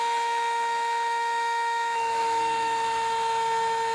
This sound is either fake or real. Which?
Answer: fake